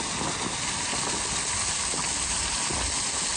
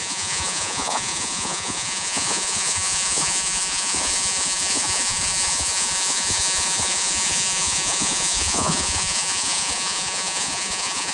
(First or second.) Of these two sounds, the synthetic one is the second